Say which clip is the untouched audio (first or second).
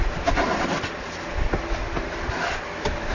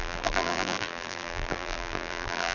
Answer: first